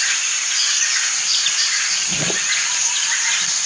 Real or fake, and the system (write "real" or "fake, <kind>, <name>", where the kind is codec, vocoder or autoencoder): real